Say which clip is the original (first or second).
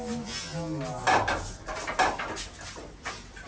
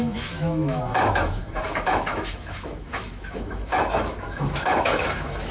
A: first